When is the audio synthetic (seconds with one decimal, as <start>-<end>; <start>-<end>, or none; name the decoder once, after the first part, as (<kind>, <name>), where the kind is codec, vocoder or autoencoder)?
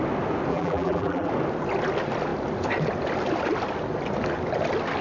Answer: 0.5-1.3 (vocoder, BigVGAN v2)